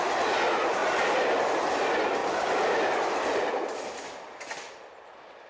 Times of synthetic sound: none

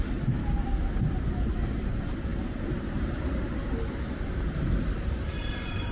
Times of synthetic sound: 0.0-5.9

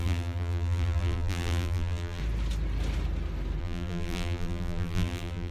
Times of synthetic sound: 0.0-2.2; 3.6-5.5

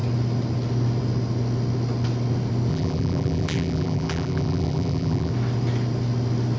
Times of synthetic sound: 2.7-5.3

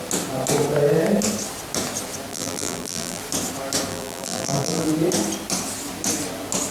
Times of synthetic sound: 2.3-3.2; 3.9-4.9